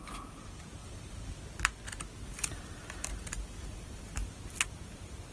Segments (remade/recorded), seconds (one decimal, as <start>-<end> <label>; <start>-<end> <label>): 0.0-0.8 recorded; 0.8-1.4 remade; 1.4-2.3 recorded; 2.3-4.0 remade; 4.0-5.3 recorded